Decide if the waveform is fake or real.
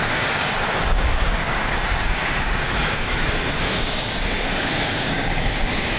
fake